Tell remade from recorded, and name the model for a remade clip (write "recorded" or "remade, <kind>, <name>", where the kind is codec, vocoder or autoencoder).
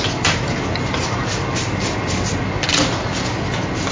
recorded